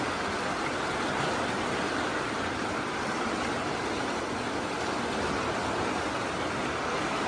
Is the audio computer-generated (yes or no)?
no